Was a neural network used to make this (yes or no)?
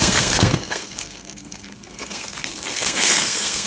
yes